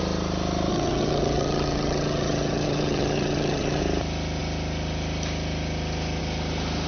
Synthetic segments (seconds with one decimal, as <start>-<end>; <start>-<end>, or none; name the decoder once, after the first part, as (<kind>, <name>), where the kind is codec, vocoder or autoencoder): 0.7-3.8 (vocoder, HiFi-GAN)